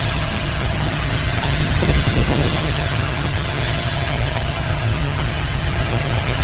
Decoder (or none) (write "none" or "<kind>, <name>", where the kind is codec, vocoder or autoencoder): vocoder, HiFi-GAN